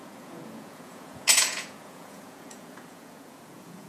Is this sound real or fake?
fake